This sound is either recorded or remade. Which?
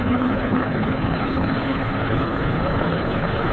remade